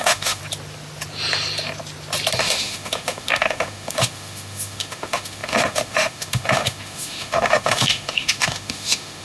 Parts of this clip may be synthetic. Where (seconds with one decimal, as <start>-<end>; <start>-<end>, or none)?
0.0-0.4; 2.4-9.2